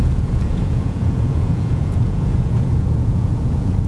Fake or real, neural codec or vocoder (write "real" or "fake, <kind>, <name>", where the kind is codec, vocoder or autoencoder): fake, vocoder, Vocos